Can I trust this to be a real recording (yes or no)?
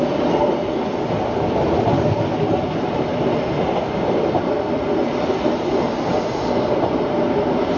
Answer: yes